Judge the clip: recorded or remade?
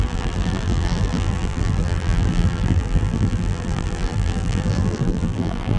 remade